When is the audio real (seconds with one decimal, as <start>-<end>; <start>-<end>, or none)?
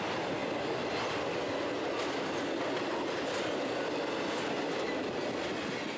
0.0-6.0